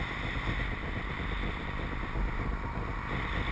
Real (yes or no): yes